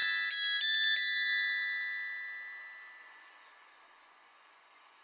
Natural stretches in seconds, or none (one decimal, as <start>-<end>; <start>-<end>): 0.0-3.0